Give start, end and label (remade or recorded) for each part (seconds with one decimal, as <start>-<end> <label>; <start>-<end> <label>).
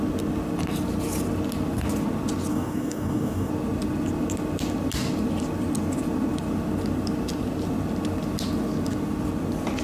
0.0-2.5 recorded; 2.5-3.5 remade; 3.5-9.8 recorded